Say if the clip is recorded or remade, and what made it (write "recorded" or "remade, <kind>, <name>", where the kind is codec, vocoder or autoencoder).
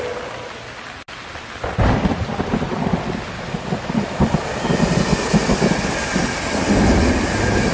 recorded